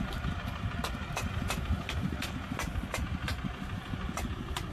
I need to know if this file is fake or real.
real